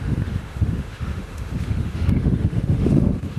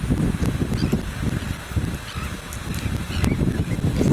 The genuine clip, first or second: second